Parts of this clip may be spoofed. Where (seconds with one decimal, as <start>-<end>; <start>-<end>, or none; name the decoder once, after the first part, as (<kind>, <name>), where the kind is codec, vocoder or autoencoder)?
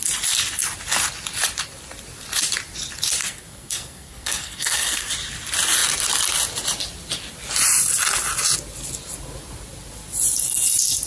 3.2-5.1 (codec, SNAC)